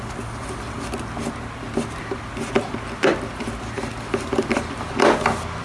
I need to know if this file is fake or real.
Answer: real